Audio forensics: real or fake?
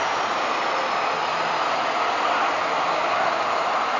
real